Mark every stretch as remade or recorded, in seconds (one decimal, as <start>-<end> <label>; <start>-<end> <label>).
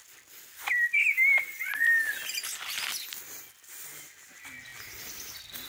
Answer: 0.0-4.7 recorded; 4.7-5.3 remade; 5.3-5.7 recorded